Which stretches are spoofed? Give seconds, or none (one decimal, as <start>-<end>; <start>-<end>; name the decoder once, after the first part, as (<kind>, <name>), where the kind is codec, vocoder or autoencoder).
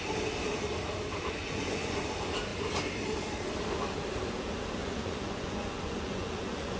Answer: 1.4-2.0 (vocoder, Vocos); 4.8-6.8